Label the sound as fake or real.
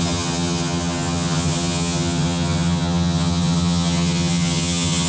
fake